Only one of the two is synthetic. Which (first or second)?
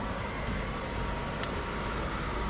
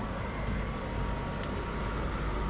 first